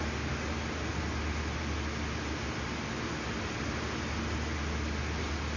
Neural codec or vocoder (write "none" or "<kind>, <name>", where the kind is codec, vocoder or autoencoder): none